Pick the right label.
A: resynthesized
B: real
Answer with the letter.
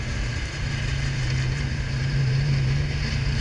A